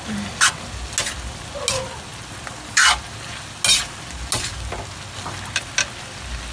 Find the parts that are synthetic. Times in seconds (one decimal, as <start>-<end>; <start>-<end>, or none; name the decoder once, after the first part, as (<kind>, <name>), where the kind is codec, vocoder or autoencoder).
none